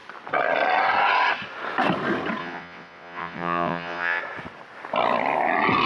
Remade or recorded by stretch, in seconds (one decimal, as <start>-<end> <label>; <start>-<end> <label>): 0.0-2.4 recorded; 2.4-4.2 remade; 4.2-5.9 recorded